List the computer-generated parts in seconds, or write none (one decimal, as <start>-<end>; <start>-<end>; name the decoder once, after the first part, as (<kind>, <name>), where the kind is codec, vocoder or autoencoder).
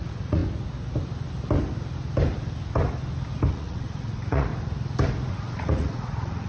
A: 0.0-0.4 (vocoder, Vocos); 3.5-4.5; 5.3-6.5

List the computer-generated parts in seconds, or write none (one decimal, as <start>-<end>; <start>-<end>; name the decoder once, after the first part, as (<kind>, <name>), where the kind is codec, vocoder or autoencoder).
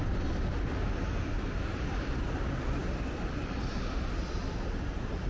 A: none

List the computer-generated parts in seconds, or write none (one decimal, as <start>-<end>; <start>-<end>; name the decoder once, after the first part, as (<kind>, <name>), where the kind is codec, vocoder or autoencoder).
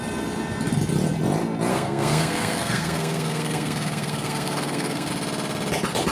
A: 1.7-5.1 (codec, SNAC)